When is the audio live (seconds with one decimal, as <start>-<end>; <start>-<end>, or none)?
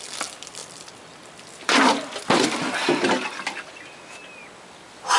0.0-0.6; 3.7-5.2